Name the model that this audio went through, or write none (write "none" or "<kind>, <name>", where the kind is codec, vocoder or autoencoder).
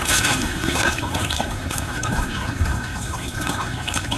codec, SNAC